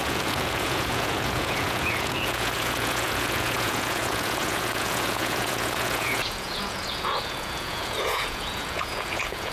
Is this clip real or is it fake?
fake